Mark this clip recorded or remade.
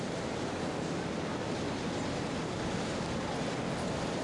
recorded